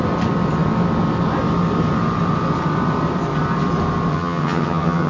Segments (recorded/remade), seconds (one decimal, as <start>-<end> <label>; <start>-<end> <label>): 0.0-4.1 recorded; 4.1-5.1 remade

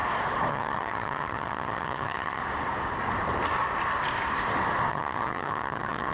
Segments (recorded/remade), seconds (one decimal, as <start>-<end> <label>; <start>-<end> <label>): 0.0-0.5 recorded; 0.5-2.4 remade; 2.4-4.9 recorded; 4.9-6.1 remade

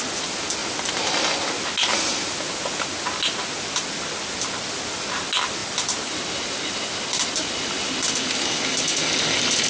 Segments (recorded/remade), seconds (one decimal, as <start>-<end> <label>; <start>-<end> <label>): 0.0-9.7 recorded

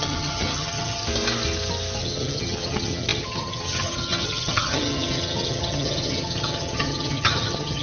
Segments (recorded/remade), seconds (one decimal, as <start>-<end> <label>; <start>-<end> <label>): 0.0-1.0 remade; 1.0-2.0 recorded; 2.0-7.8 remade